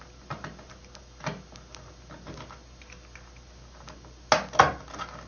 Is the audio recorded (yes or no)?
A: yes